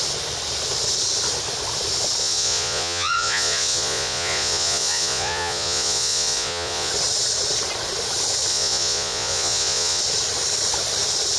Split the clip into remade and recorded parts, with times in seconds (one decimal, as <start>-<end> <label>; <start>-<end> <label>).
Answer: 0.0-2.2 recorded; 2.2-6.9 remade; 6.9-8.5 recorded; 8.5-10.0 remade; 10.0-11.4 recorded